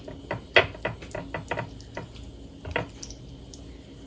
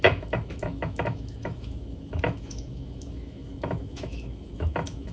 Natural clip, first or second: first